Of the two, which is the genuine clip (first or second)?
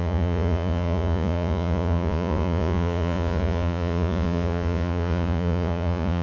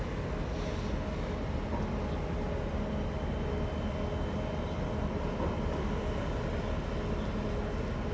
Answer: second